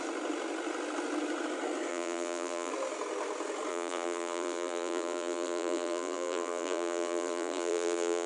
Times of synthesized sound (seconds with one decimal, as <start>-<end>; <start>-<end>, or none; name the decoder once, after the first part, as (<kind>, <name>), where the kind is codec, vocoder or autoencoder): 1.9-2.7 (vocoder, BigVGAN v2); 3.7-8.3